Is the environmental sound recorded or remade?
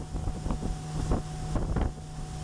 recorded